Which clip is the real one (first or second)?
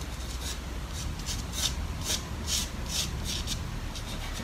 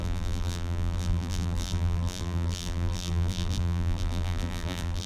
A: first